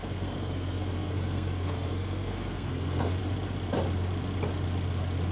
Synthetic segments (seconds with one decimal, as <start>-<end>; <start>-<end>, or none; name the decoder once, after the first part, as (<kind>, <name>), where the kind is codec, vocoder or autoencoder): 0.0-3.2 (codec, SNAC)

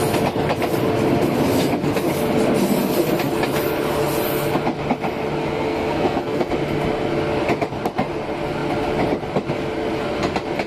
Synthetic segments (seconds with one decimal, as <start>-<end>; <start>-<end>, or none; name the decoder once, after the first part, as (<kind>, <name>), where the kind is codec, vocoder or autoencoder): 5.4-6.5 (codec, SNAC)

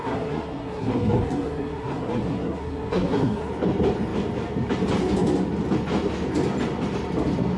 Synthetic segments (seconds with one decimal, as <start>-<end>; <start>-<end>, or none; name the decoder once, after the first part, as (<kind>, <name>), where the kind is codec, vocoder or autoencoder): 0.0-3.5 (codec, SNAC)

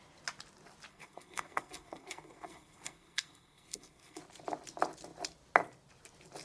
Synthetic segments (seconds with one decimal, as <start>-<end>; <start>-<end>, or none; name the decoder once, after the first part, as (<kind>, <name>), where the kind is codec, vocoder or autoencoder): 0.9-4.2 (codec, SNAC)

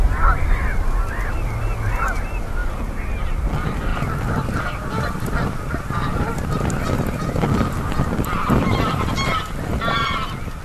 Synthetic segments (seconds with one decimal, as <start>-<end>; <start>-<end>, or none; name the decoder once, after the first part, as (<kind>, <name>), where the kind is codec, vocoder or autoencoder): none

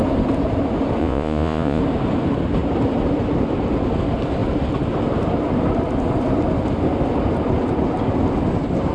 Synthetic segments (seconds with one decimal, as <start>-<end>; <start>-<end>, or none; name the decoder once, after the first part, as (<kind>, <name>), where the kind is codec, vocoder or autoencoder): 1.0-1.8 (vocoder, Vocos)